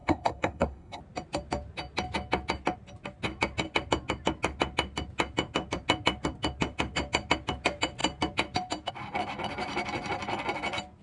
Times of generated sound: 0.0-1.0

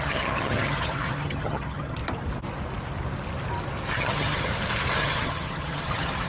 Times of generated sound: 0.0-2.0; 3.9-4.5; 5.0-6.3